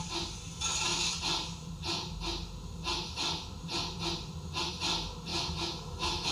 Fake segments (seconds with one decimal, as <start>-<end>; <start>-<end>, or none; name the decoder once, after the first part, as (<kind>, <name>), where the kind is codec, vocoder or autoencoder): 5.3-6.3 (autoencoder, DAC-VAE)